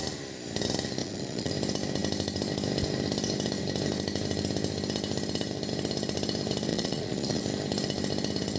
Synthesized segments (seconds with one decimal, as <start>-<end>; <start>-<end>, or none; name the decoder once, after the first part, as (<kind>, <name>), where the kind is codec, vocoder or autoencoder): 1.0-1.5 (vocoder, Vocos); 6.7-7.4